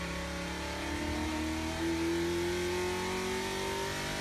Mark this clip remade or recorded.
recorded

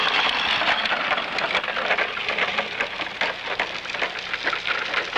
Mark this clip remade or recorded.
recorded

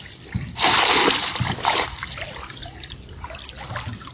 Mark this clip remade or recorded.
recorded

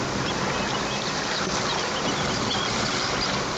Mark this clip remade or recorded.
recorded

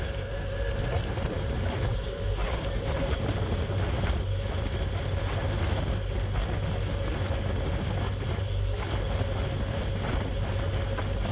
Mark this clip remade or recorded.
recorded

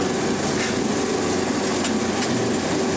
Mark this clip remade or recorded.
recorded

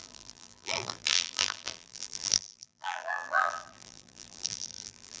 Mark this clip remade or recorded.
remade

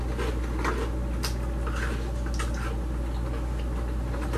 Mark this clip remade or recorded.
recorded